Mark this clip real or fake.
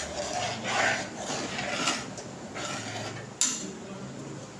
real